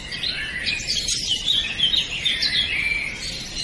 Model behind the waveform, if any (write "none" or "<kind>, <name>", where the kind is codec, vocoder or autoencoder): none